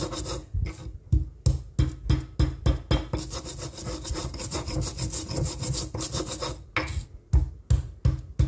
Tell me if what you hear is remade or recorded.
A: recorded